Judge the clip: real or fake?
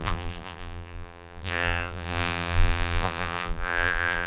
fake